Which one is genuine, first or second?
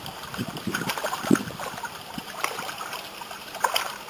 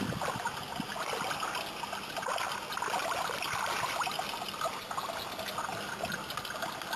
second